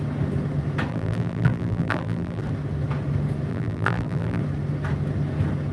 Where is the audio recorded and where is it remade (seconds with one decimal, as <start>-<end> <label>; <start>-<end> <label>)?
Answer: 0.0-0.9 recorded; 0.9-2.4 remade; 2.4-3.5 recorded; 3.5-4.4 remade; 4.4-5.7 recorded